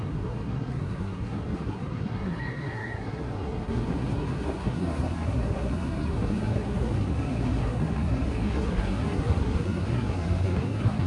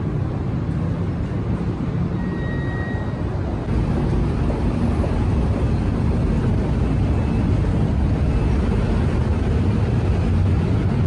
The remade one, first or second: first